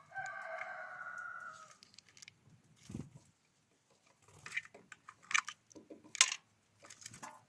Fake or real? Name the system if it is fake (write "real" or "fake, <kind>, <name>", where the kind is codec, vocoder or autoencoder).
real